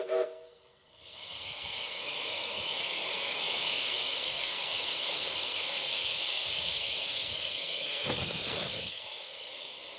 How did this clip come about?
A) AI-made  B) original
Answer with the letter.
A